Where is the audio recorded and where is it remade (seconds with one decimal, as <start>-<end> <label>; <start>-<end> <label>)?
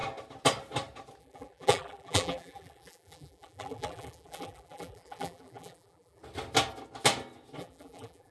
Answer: 0.0-1.2 recorded; 1.2-6.2 remade; 6.2-7.6 recorded; 7.6-8.3 remade